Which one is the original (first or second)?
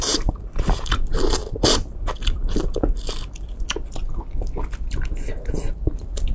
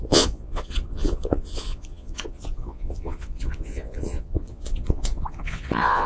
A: first